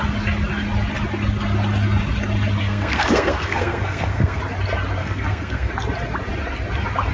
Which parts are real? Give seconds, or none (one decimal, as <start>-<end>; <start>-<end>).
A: 0.0-2.6; 4.4-5.0; 5.7-7.1